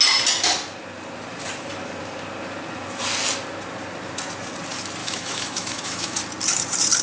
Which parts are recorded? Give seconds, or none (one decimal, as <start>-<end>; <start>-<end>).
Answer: 0.0-5.0; 6.2-7.0